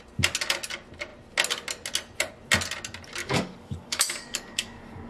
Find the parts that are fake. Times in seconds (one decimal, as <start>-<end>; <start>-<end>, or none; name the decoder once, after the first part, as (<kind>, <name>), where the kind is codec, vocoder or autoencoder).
3.2-5.1 (codec, DAC)